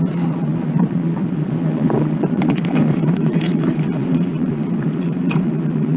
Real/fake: fake